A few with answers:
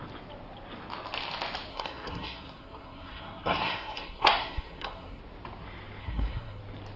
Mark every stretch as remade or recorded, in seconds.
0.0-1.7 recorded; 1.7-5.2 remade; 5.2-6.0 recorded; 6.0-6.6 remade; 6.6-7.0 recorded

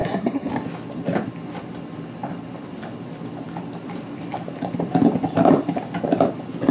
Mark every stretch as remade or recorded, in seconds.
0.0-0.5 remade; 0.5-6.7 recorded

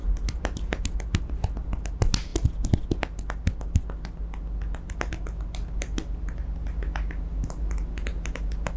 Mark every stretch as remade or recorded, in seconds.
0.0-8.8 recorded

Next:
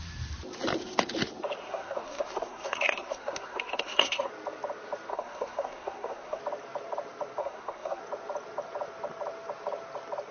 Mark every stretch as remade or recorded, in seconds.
0.0-1.6 recorded; 1.6-4.3 remade; 4.3-5.1 recorded; 5.1-6.4 remade; 6.4-7.4 recorded; 7.4-8.0 remade; 8.0-10.3 recorded

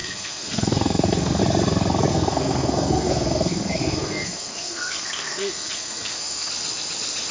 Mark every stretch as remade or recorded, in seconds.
0.0-1.4 remade; 1.4-2.1 recorded; 2.1-6.5 remade; 6.5-7.3 recorded

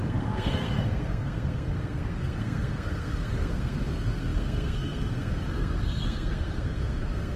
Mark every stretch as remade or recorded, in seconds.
0.0-7.4 remade

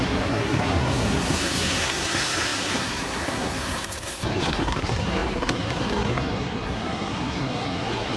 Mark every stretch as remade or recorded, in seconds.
0.0-8.2 remade